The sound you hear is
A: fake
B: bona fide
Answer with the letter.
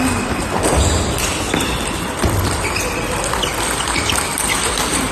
B